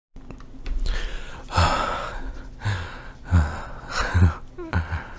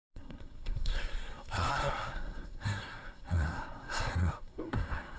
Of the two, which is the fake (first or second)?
second